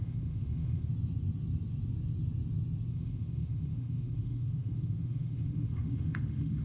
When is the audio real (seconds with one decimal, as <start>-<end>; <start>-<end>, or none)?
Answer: 0.9-2.9